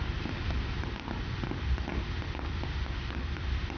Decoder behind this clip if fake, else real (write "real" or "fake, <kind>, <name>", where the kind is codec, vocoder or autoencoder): real